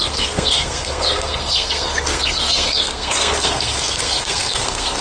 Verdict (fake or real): fake